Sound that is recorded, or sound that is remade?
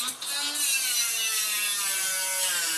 remade